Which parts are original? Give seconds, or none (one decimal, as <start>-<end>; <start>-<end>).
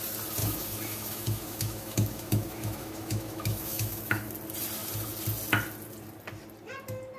0.0-0.4; 4.3-7.2